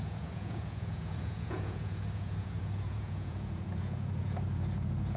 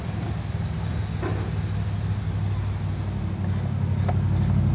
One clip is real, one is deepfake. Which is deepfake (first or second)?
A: first